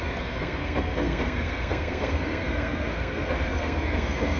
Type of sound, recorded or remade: remade